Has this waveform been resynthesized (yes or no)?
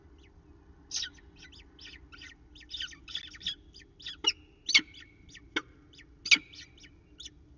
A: no